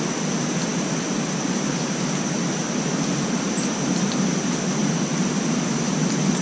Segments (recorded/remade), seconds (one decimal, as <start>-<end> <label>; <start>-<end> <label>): 0.0-6.4 recorded